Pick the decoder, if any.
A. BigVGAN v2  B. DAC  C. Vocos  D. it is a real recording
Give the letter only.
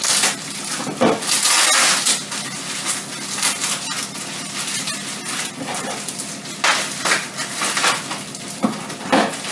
D